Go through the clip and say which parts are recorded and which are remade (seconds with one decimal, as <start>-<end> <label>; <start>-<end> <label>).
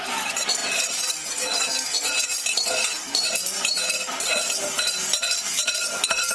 0.0-6.3 recorded